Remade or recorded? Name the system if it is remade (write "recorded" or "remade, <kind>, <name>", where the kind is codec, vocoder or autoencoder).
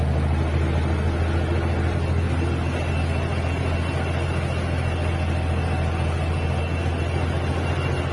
recorded